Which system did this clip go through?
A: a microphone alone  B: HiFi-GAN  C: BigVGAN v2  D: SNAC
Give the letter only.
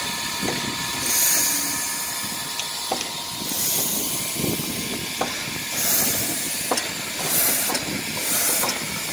A